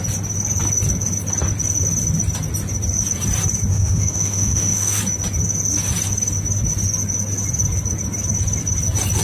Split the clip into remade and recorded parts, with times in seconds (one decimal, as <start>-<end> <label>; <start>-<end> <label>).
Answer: 0.0-3.7 recorded; 3.7-5.0 remade; 5.0-9.2 recorded